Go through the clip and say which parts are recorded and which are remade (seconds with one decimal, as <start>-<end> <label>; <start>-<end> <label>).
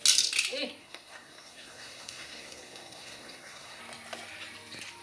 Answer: 0.0-0.8 recorded; 0.8-3.8 remade; 3.8-5.0 recorded